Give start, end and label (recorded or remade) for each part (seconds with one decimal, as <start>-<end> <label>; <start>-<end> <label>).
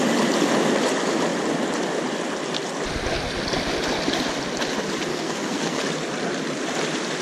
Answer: 0.0-5.1 recorded; 5.1-5.8 remade; 5.8-7.2 recorded